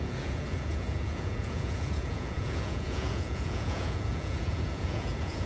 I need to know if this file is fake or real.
fake